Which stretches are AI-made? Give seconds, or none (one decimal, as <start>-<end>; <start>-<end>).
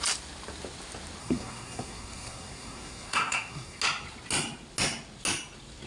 1.2-3.8